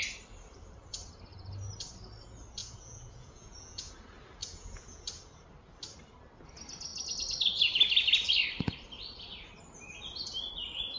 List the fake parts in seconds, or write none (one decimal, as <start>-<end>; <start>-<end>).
2.6-3.9; 4.4-5.0